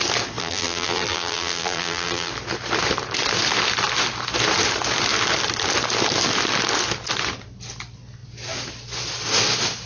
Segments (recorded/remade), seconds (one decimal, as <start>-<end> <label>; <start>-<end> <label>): 0.0-0.4 recorded; 0.4-2.3 remade; 2.3-9.9 recorded